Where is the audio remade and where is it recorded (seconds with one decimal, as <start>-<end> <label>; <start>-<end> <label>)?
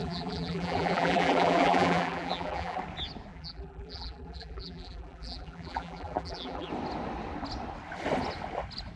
0.0-2.8 remade; 2.8-3.3 recorded; 3.3-6.7 remade; 6.7-9.0 recorded